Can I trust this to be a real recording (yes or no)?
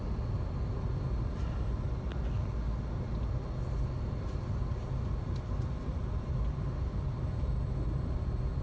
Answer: yes